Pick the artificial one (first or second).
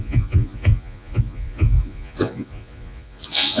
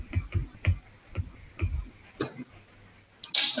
first